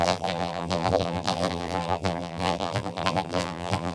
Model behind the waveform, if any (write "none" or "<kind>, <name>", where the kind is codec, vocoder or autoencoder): vocoder, BigVGAN v2